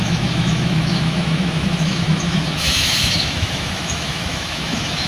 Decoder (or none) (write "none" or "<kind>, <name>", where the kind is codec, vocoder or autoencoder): autoencoder, DAC-VAE